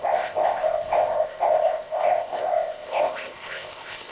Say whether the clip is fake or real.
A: fake